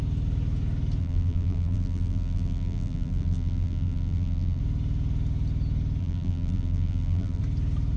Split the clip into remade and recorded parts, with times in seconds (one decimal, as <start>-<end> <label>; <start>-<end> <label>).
0.0-1.0 recorded; 1.0-4.6 remade; 4.6-6.0 recorded; 6.0-7.4 remade; 7.4-8.0 recorded